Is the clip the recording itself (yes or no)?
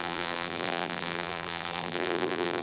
no